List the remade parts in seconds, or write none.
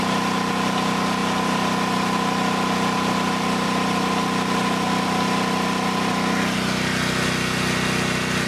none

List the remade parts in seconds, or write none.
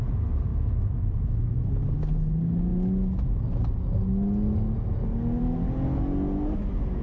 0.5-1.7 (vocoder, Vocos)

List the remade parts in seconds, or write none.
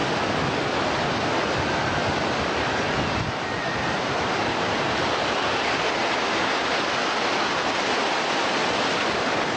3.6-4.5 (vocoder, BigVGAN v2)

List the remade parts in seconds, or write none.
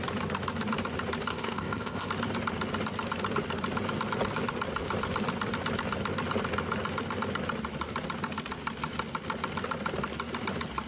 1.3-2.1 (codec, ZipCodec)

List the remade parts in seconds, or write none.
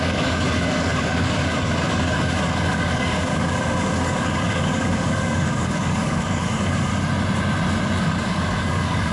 0.0-6.9 (codec, DAC); 8.0-9.1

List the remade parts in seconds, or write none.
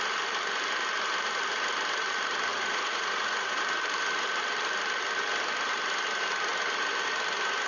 2.5-3.6 (vocoder, Vocos)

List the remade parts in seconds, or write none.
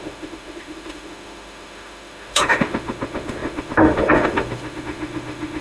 0.0-5.6 (autoencoder, DAC-VAE)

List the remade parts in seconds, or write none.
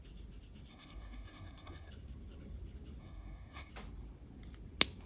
0.7-1.9 (codec, SNAC); 3.0-3.7